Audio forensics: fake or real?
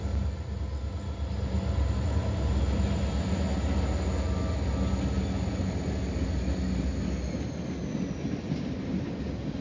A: real